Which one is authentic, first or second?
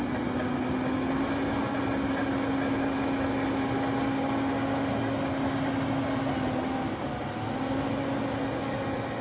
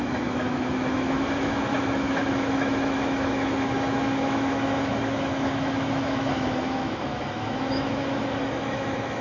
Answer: first